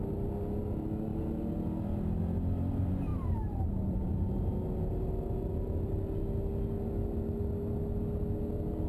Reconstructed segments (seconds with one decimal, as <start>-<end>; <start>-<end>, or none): 3.1-4.4